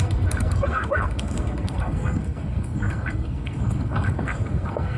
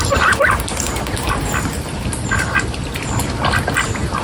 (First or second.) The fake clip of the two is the first